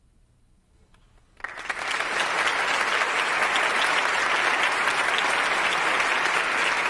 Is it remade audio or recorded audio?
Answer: recorded